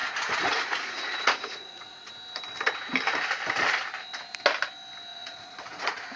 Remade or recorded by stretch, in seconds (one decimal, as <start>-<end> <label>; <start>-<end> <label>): 0.0-2.1 remade; 2.1-5.1 recorded; 5.1-6.2 remade